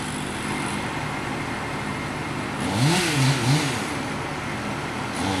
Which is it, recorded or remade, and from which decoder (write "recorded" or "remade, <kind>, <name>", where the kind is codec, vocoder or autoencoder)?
recorded